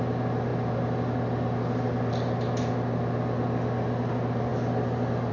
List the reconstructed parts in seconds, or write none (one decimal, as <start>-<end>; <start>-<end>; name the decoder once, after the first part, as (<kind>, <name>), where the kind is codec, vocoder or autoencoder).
none